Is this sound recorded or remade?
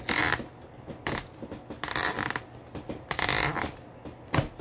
recorded